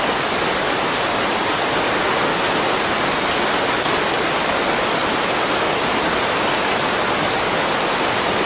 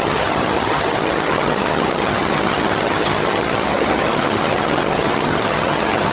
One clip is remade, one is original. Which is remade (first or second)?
second